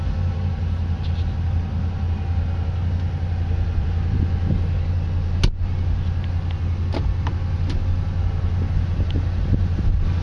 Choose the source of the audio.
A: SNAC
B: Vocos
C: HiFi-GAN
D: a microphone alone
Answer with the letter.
D